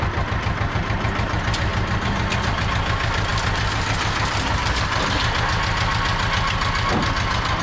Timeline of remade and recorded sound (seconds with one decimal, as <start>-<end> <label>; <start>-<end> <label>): 0.0-7.6 recorded